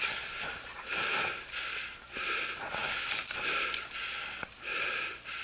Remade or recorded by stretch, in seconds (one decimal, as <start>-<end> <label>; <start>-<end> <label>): 0.0-5.4 recorded